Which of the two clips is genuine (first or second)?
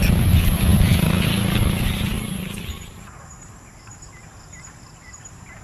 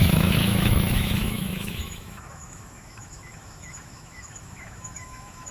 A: first